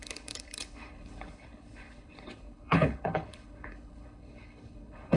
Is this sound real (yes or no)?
no